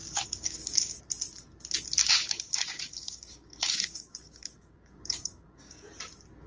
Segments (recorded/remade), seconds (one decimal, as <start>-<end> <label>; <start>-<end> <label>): 0.0-1.0 remade; 1.0-2.0 recorded; 2.0-5.9 remade; 5.9-6.5 recorded